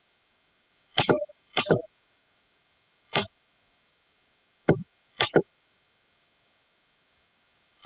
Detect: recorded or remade remade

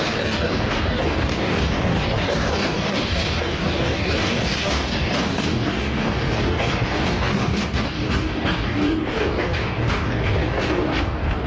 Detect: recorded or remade remade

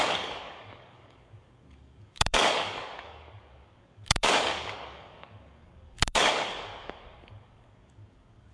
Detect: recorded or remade remade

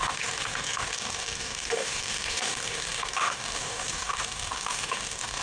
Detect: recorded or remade remade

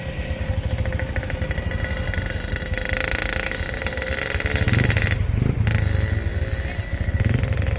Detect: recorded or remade recorded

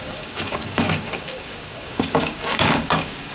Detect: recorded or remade remade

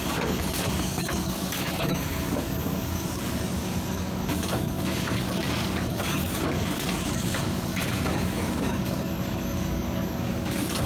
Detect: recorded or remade remade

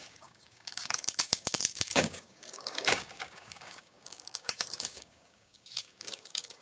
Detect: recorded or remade remade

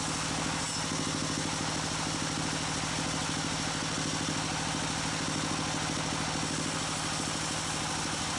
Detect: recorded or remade recorded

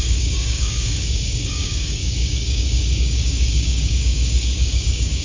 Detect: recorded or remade remade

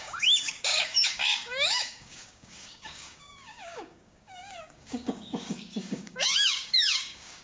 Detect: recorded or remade remade